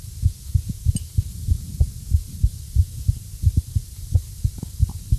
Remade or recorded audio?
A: remade